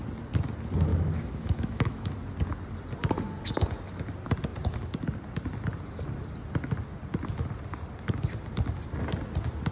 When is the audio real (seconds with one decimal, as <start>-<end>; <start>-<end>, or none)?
0.0-0.9; 2.1-9.7